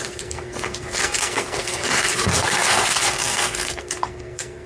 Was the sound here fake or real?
fake